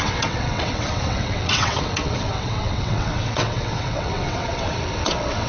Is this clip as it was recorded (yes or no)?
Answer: no